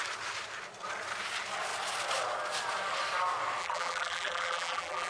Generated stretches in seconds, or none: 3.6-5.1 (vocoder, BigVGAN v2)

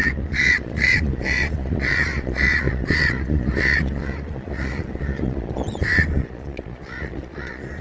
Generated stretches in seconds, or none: 0.0-7.8 (vocoder, Vocos)

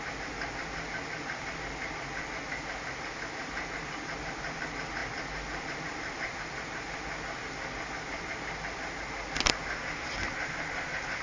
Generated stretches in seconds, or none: none